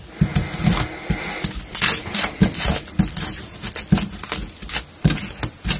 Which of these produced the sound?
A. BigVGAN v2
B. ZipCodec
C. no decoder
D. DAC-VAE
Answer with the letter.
C